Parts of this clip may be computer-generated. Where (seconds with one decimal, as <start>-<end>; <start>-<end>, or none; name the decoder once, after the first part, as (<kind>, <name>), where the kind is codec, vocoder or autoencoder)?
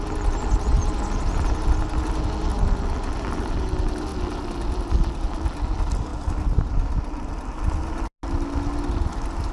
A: none